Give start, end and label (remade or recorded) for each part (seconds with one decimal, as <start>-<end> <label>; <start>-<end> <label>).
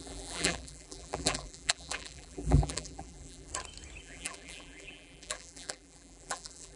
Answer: 0.0-3.5 remade; 3.5-4.0 recorded; 4.0-6.8 remade